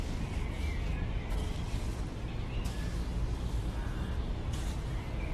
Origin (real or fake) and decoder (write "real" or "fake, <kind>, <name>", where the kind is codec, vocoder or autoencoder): real